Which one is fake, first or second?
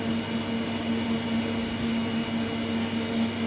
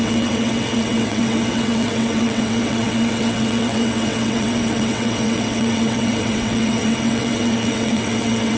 second